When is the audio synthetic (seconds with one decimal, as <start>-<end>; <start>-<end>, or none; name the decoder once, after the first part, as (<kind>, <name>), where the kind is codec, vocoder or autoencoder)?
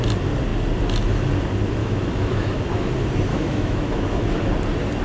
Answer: 1.8-2.9 (autoencoder, DAC-VAE); 3.3-4.5